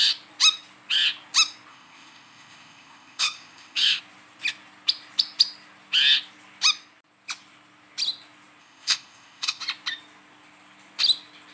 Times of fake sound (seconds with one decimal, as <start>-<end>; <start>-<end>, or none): 1.7-4.0; 8.6-9.6